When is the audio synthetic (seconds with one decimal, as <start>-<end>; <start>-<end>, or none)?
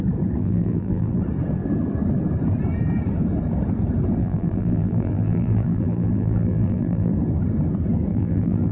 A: 0.4-1.2; 4.2-7.1; 8.1-8.7